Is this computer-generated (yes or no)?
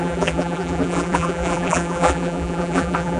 yes